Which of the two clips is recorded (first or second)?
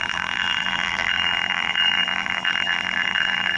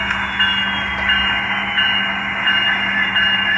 second